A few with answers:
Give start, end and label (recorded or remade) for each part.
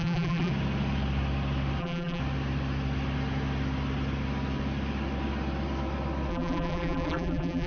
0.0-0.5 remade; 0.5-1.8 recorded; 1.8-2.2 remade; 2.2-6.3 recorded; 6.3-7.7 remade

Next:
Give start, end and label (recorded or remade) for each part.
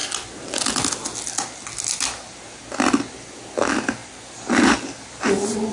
0.0-5.7 recorded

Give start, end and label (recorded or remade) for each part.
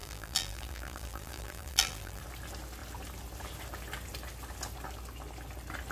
0.0-2.2 remade; 2.2-5.9 recorded